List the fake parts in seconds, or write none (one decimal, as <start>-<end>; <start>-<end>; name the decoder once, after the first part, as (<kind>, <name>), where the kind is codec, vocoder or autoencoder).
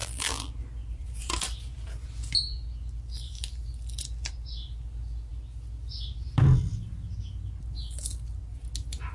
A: 0.0-0.5 (vocoder, BigVGAN v2)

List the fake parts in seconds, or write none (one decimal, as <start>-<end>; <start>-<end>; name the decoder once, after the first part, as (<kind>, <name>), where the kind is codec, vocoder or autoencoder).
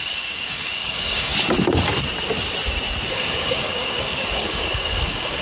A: 0.0-1.3 (codec, DAC); 3.1-5.4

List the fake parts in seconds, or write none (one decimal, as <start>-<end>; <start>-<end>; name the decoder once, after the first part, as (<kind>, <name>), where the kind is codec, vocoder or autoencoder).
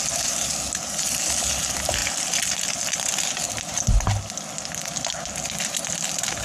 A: none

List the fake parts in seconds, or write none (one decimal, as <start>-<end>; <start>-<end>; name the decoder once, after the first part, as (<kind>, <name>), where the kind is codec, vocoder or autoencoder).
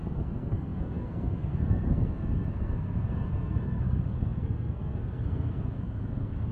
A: 0.0-6.5 (codec, SNAC)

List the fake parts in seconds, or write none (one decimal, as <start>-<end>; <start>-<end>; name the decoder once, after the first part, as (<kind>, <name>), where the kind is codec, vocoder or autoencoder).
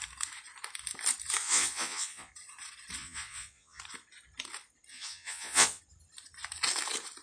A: 1.4-2.3 (vocoder, Vocos); 3.0-3.8; 4.9-5.8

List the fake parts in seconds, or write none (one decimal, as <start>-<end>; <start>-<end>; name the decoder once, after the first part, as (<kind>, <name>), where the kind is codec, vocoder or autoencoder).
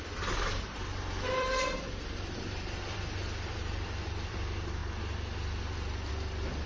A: 0.0-4.8 (vocoder, BigVGAN v2); 6.1-6.7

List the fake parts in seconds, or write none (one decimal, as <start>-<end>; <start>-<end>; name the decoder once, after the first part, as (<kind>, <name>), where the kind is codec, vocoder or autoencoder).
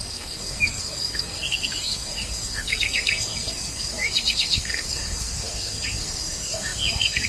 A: 0.0-7.3 (codec, SNAC)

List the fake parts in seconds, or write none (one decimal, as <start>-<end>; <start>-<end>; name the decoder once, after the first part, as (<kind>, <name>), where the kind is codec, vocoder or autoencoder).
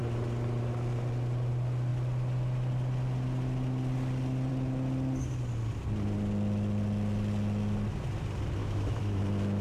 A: 8.6-9.2 (autoencoder, DAC-VAE)